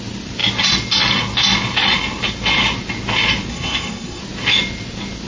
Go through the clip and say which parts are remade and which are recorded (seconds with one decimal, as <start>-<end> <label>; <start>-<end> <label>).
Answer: 0.0-3.5 recorded; 3.5-4.2 remade; 4.2-5.3 recorded